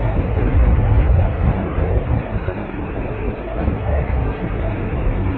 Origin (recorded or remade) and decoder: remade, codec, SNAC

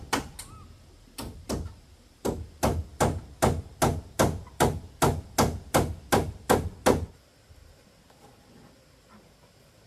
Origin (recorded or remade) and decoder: recorded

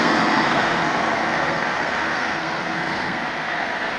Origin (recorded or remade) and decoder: remade, codec, SNAC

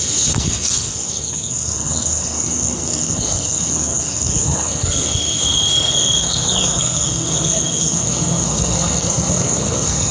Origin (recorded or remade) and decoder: remade, codec, SNAC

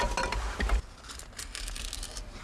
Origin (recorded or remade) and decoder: recorded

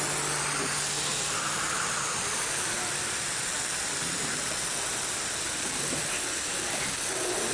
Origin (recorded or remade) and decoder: recorded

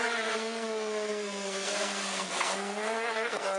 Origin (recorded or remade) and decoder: remade, codec, SNAC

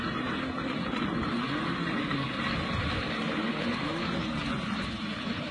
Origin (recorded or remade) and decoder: recorded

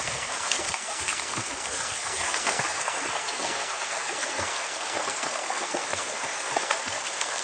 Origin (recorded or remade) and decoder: remade, codec, SNAC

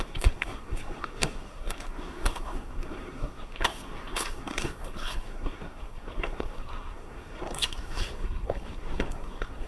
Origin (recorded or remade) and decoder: remade, codec, SNAC